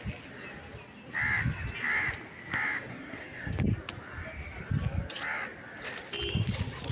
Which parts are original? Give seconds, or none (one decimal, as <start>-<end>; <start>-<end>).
0.0-2.9; 3.5-6.9